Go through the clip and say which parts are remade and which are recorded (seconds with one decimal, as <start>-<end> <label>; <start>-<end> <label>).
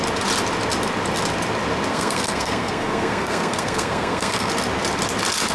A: 0.0-1.9 recorded; 1.9-4.5 remade; 4.5-5.5 recorded